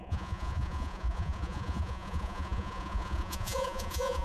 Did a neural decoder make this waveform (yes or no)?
yes